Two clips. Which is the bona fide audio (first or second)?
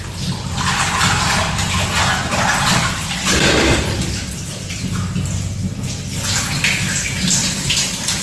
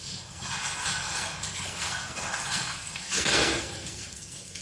first